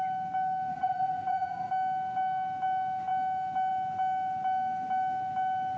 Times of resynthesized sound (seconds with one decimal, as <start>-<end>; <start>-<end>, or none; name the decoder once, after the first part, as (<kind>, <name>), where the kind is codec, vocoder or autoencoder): 0.7-1.7 (vocoder, Vocos)